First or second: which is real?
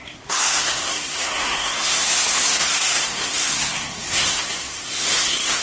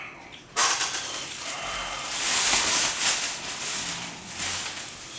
second